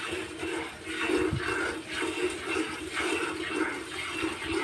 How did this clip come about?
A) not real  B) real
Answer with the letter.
B